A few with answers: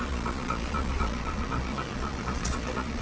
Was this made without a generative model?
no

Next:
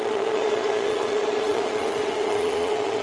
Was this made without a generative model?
no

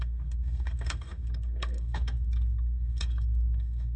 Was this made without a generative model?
no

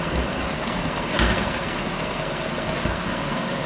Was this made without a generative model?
no